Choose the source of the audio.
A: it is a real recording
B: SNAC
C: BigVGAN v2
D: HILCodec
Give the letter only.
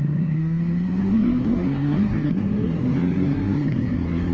B